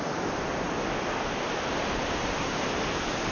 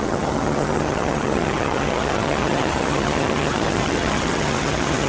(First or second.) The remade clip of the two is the second